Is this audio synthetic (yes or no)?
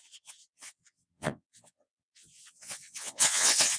yes